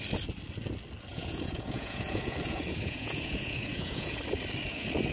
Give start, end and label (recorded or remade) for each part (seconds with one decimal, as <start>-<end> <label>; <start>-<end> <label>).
0.0-1.1 recorded; 1.1-4.2 remade; 4.2-5.1 recorded